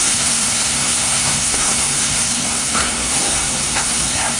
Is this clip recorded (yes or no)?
no